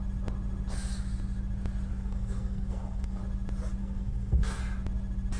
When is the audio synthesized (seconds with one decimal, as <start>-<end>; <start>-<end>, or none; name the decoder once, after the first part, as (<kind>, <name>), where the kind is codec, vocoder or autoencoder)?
1.9-3.2 (codec, SNAC); 3.8-4.6